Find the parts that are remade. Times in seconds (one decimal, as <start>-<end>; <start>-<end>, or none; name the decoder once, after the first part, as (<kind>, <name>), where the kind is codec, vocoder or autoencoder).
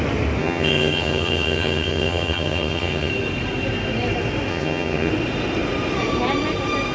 0.4-3.1 (vocoder, HiFi-GAN); 4.5-5.1